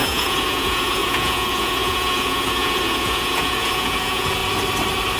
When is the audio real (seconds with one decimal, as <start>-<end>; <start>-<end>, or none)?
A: 4.4-5.2